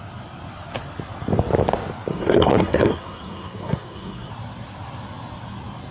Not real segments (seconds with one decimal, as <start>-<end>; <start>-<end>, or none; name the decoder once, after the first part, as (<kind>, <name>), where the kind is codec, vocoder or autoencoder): 2.1-4.3 (codec, SNAC)